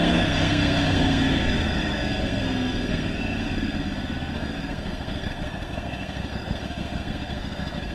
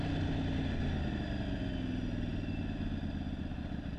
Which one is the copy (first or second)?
first